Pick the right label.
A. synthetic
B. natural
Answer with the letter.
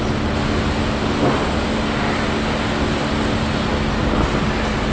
B